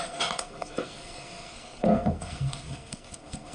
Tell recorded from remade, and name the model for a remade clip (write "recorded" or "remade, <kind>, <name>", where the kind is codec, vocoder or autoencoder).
remade, codec, SNAC